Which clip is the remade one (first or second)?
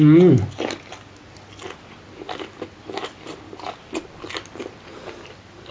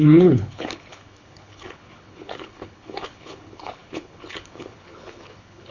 second